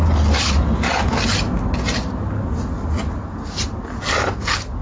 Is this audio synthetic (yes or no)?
no